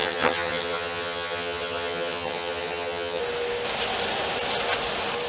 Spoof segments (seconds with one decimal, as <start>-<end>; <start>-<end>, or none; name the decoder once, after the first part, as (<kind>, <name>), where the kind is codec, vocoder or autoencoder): 0.0-3.2 (vocoder, HiFi-GAN)